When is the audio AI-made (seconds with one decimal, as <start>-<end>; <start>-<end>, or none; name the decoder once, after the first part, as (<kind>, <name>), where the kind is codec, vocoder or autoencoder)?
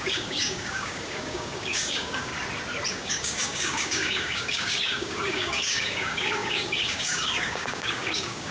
0.0-2.3 (codec, DAC); 2.9-8.5